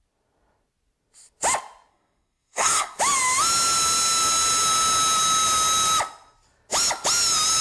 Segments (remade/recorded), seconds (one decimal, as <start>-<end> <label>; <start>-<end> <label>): 0.0-1.9 recorded; 1.9-3.0 remade; 3.0-7.6 recorded